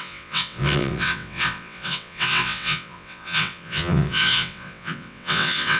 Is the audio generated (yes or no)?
yes